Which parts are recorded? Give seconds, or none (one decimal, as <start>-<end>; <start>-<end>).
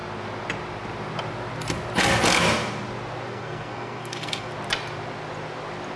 0.0-3.3; 4.5-6.0